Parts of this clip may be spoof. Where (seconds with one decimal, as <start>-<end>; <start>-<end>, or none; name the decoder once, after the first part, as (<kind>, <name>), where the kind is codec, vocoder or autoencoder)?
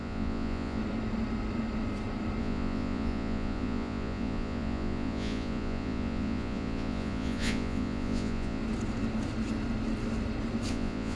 0.0-0.8 (vocoder, Vocos); 2.4-8.6; 10.7-11.2